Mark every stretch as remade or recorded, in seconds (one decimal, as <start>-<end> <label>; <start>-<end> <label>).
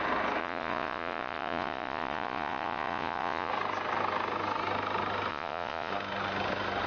0.0-0.4 recorded; 0.4-3.5 remade; 3.5-5.3 recorded; 5.3-5.9 remade; 5.9-6.9 recorded